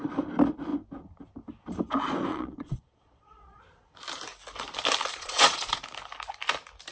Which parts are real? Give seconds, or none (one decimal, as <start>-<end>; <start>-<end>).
0.0-2.3; 3.6-5.1; 5.8-6.9

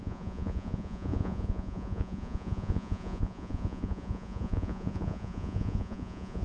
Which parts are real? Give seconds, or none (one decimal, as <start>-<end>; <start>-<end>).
none